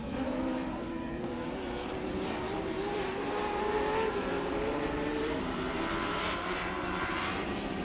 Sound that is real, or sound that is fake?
fake